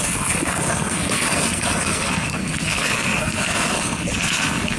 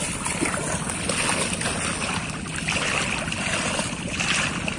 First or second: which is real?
second